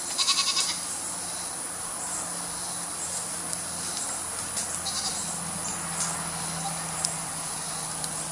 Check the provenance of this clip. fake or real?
fake